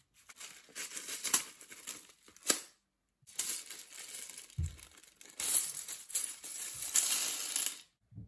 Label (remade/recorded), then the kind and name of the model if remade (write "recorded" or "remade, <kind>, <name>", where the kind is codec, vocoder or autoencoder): recorded